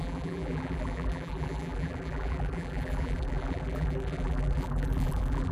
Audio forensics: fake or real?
fake